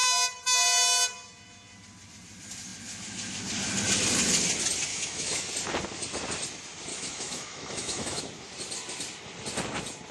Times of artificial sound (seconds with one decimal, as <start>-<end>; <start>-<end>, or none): 4.9-5.5; 6.9-8.2